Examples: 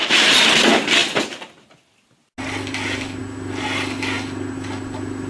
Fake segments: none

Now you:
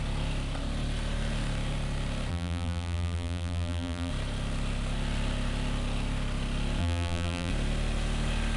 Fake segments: 2.3-4.1 (vocoder, BigVGAN v2); 6.8-7.5